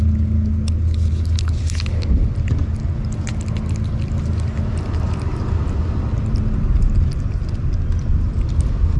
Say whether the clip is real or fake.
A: real